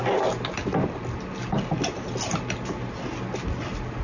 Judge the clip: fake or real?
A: real